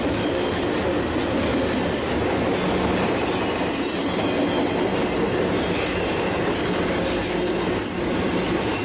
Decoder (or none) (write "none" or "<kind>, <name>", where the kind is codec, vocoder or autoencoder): none